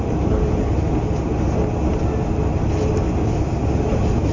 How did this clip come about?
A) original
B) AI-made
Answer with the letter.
A